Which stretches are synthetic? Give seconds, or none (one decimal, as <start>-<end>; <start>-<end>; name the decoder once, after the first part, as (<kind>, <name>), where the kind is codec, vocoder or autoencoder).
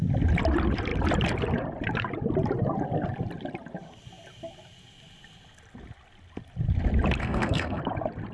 7.2-7.8 (codec, SNAC)